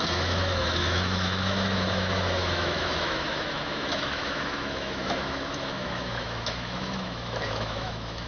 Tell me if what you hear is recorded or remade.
remade